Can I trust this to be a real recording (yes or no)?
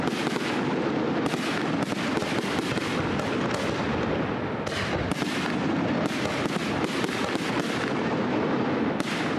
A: yes